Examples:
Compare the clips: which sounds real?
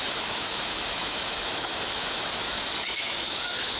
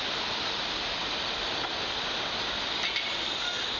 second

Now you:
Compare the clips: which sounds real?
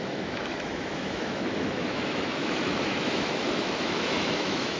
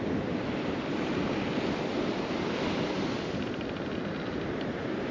second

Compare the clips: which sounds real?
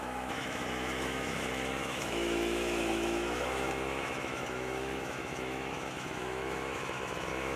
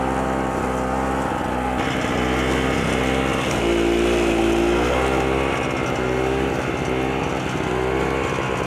second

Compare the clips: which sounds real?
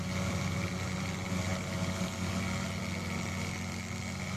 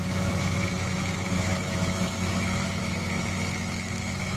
first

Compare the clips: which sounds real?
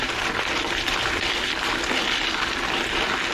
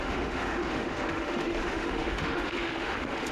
first